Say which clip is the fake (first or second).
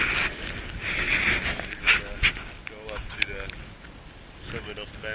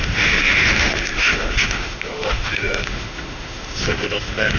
second